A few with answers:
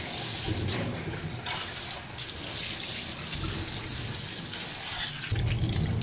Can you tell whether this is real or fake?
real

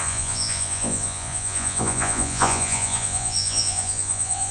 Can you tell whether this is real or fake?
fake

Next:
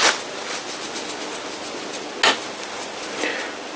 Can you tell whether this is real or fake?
real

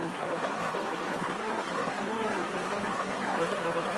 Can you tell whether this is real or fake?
fake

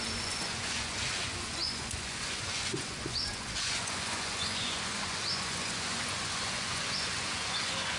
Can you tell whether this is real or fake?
fake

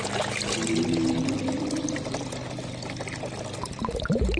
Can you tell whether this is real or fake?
real